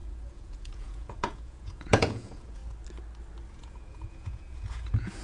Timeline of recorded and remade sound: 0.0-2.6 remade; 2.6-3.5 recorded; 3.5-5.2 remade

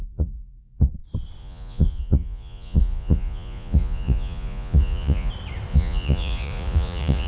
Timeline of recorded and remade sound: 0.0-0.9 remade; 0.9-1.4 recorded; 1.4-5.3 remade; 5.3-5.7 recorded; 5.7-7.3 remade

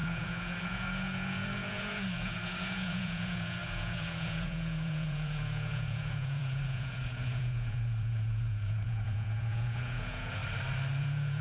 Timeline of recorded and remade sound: 0.0-10.4 remade; 10.4-11.0 recorded; 11.0-11.4 remade

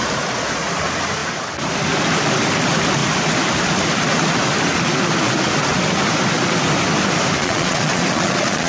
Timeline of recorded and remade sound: 0.0-7.4 recorded; 7.4-8.7 remade